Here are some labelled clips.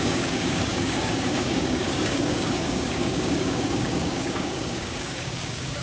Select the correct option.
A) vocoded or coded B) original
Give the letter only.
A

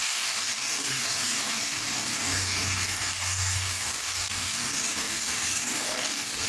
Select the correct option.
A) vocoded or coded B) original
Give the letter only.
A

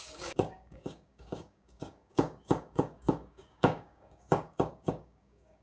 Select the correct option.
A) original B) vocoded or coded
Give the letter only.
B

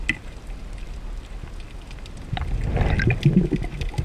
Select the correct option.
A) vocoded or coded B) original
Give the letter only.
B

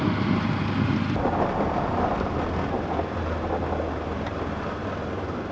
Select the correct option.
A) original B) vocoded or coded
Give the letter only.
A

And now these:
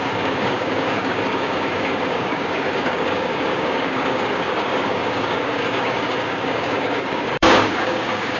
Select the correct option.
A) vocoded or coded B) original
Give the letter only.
A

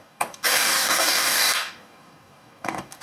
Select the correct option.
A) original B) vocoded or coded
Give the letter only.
B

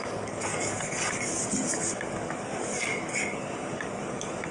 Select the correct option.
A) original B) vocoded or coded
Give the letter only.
B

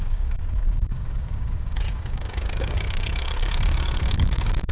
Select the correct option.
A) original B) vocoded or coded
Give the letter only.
B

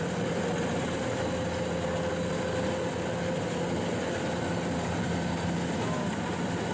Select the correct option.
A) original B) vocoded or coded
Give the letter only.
A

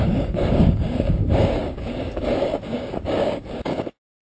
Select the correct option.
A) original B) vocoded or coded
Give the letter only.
B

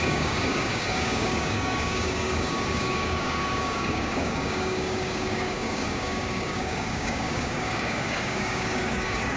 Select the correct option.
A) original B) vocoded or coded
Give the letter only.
B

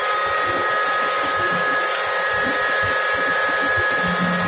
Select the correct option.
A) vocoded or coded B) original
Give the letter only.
B